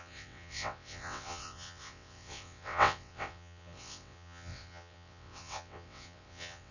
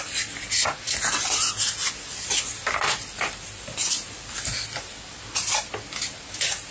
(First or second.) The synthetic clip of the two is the first